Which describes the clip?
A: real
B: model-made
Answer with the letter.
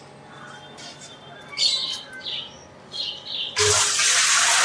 A